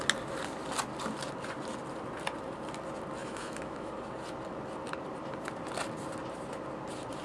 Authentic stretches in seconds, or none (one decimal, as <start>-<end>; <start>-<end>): 0.0-3.2; 3.9-7.2